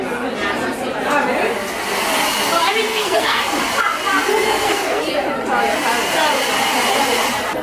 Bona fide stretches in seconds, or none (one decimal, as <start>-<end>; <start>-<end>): 0.0-2.9; 3.4-4.3; 5.0-7.6